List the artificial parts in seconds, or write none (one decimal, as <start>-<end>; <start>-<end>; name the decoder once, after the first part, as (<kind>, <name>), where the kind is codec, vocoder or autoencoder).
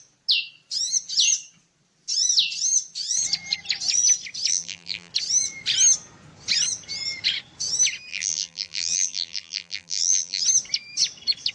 4.5-5.1 (vocoder, BigVGAN v2); 8.1-10.4